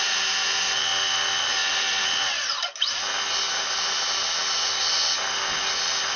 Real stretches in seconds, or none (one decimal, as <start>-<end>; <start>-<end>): 0.0-6.2